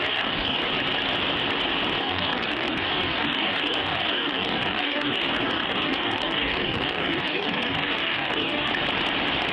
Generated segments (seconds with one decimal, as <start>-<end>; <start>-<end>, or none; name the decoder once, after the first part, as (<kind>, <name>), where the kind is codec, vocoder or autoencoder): 0.0-0.6 (codec, DAC); 2.0-8.7

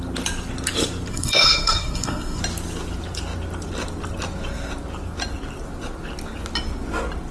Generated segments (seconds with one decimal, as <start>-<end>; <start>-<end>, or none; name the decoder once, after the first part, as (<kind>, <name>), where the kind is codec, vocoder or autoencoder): 1.1-2.4 (codec, SNAC)